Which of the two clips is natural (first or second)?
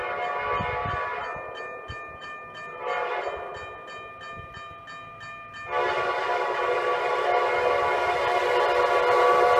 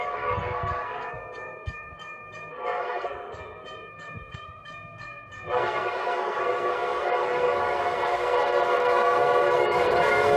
first